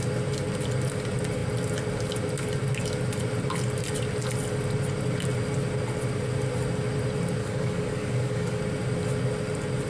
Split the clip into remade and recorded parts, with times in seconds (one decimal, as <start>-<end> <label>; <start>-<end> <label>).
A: 0.0-7.4 recorded; 7.4-8.6 remade; 8.6-9.9 recorded